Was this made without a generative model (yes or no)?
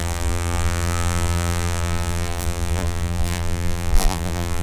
no